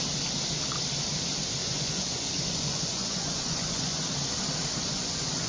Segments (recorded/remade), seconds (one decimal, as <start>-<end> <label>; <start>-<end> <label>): 0.0-1.6 recorded; 1.6-4.0 remade; 4.0-4.8 recorded; 4.8-5.5 remade